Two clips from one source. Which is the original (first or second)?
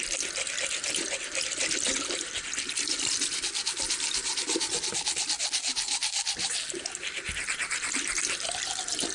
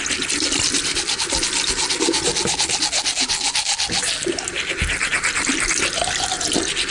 second